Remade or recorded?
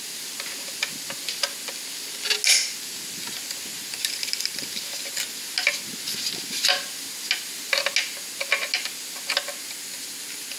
recorded